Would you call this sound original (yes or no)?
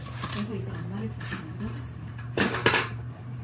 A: no